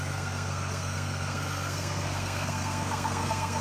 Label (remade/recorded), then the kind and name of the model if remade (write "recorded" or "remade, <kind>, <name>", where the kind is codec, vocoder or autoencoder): remade, codec, SNAC